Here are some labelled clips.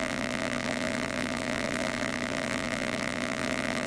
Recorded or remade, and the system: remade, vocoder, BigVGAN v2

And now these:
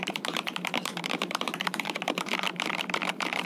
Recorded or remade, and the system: remade, vocoder, BigVGAN v2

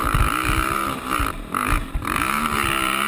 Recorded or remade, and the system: remade, vocoder, BigVGAN v2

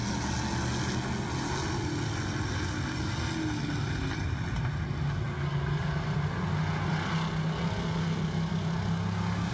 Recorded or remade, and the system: recorded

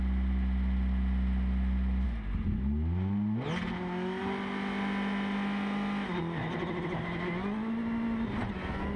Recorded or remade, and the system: recorded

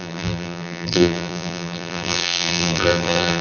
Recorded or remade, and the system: remade, vocoder, BigVGAN v2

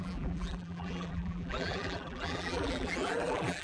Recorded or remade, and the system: remade, vocoder, BigVGAN v2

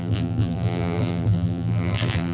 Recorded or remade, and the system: remade, vocoder, BigVGAN v2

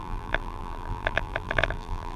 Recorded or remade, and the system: remade, vocoder, BigVGAN v2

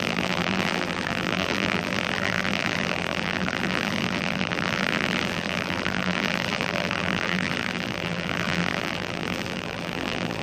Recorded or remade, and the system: remade, vocoder, BigVGAN v2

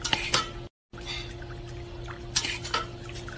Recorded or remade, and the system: recorded